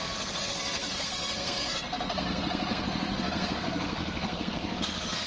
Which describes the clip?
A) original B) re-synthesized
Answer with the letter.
B